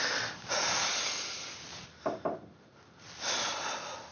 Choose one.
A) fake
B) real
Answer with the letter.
B